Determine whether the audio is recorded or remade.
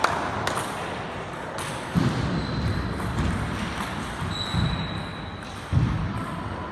recorded